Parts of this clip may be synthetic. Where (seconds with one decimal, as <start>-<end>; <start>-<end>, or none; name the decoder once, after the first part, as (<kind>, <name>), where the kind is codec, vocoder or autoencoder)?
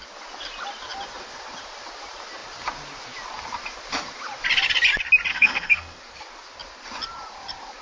5.3-6.0 (codec, SNAC)